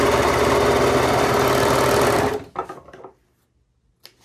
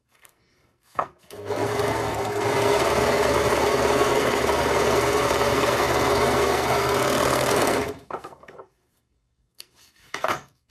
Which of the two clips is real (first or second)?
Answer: first